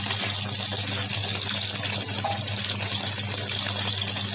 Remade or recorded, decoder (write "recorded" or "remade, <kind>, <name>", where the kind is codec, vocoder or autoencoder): recorded